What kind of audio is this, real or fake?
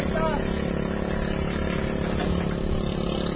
real